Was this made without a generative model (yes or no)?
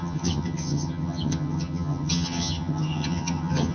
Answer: no